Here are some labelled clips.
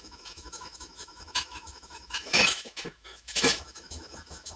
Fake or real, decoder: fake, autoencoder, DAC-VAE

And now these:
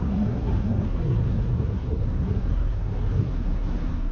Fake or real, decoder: fake, codec, SNAC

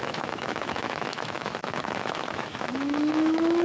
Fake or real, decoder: fake, autoencoder, DAC-VAE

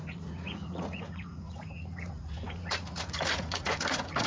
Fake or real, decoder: fake, vocoder, Vocos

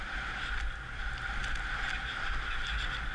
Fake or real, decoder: real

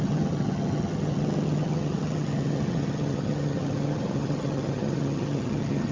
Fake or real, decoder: fake, vocoder, HiFi-GAN